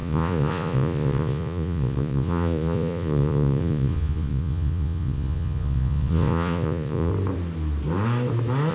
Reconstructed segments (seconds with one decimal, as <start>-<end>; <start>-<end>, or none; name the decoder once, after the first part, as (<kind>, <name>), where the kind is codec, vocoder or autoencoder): 0.0-7.1 (vocoder, Vocos)